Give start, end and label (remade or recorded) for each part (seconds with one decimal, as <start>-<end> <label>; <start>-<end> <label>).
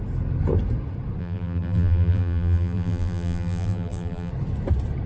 0.0-1.2 recorded; 1.2-4.3 remade; 4.3-5.1 recorded